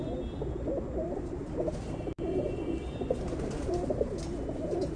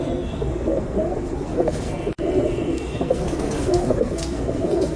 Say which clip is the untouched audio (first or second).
first